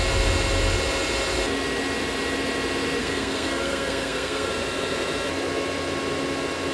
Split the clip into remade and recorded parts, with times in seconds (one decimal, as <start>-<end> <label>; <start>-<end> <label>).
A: 0.0-3.0 recorded; 3.0-4.5 remade; 4.5-6.7 recorded